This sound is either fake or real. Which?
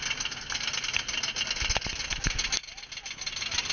real